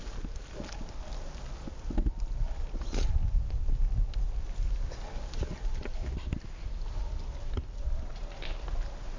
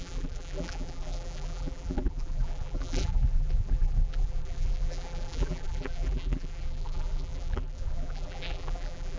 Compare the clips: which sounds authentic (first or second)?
first